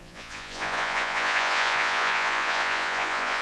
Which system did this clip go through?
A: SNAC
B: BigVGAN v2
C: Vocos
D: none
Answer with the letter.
C